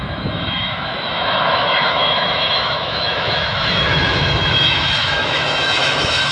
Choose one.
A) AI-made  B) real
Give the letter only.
A